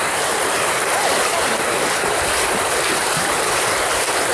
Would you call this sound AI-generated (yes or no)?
yes